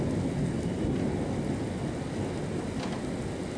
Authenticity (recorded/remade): recorded